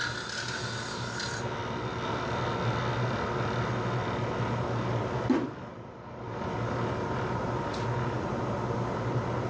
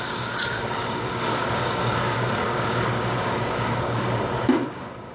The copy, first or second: second